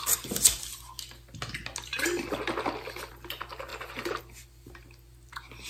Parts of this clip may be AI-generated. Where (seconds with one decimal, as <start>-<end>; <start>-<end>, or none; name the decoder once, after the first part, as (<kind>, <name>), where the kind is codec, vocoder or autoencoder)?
none

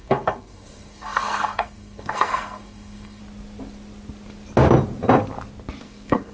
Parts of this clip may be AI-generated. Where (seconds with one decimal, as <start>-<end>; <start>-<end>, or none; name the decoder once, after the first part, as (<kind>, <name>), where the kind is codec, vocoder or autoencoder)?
0.0-3.2 (codec, SNAC); 5.8-6.3